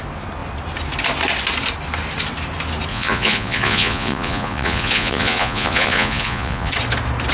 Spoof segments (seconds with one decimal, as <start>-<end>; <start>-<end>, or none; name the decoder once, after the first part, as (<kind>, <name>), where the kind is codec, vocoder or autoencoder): 2.9-6.7 (vocoder, Vocos)

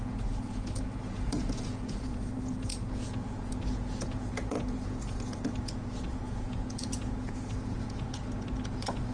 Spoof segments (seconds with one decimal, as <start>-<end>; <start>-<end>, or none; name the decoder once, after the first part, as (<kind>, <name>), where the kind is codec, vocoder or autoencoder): 0.0-9.1 (vocoder, Vocos)

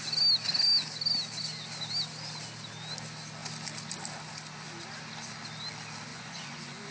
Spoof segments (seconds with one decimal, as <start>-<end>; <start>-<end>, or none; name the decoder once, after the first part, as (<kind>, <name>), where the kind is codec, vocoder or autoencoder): 6.1-6.9 (vocoder, Vocos)

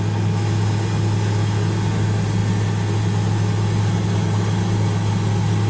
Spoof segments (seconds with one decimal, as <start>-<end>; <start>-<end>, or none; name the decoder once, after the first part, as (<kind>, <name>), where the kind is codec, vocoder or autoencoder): none